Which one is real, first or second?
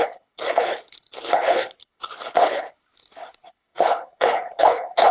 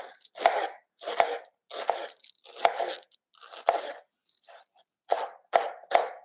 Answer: second